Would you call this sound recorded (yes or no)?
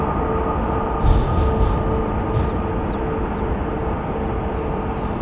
yes